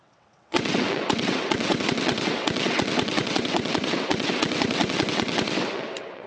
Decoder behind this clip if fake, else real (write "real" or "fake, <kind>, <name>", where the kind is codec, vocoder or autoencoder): fake, vocoder, WaveNeXt